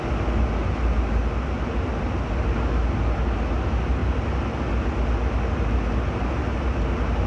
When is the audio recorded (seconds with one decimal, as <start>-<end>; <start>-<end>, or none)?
0.0-7.3